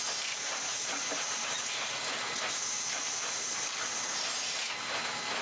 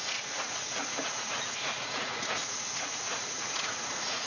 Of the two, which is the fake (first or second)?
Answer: second